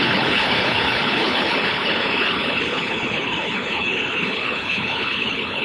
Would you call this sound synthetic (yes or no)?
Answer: yes